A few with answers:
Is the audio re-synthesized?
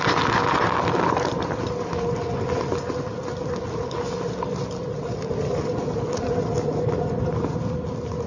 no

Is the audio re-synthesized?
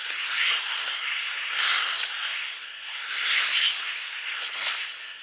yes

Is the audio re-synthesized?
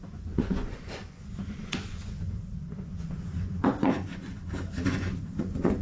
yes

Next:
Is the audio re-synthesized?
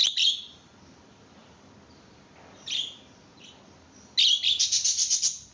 no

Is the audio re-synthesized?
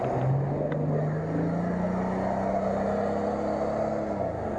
no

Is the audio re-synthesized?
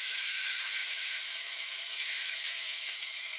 yes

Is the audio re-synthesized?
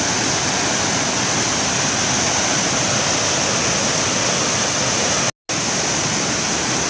no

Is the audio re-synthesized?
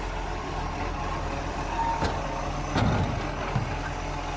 no